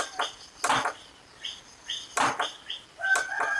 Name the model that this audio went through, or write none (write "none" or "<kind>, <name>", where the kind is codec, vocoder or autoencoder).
none